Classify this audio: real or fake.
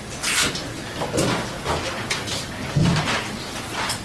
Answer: real